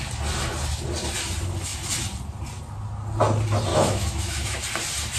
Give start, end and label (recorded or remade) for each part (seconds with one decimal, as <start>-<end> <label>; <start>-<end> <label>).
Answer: 0.0-3.7 recorded; 3.7-4.6 remade; 4.6-5.2 recorded